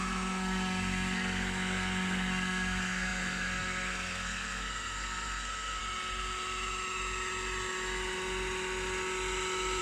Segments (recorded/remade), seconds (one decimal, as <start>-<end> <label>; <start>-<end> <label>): 0.0-5.8 remade; 5.8-9.8 recorded